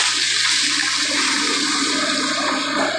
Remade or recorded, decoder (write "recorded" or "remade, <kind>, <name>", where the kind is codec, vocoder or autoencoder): recorded